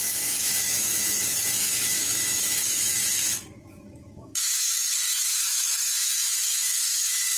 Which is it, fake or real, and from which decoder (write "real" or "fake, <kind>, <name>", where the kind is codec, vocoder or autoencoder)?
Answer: fake, autoencoder, DAC-VAE